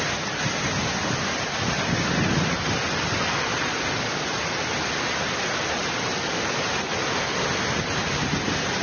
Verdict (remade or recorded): recorded